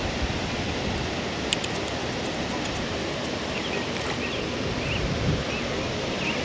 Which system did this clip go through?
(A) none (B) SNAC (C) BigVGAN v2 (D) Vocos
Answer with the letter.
A